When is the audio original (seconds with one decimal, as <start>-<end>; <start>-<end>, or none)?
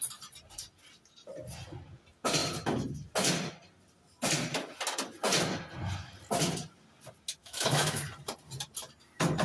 0.0-7.4; 8.0-9.4